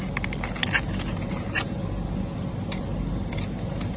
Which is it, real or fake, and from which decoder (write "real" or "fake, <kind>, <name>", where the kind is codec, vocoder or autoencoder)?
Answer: real